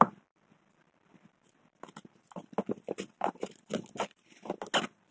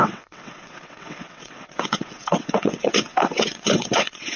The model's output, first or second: second